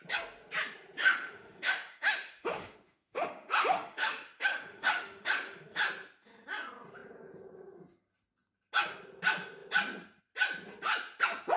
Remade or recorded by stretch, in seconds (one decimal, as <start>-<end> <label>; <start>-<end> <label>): 0.0-1.0 recorded; 1.0-5.8 remade; 5.8-11.6 recorded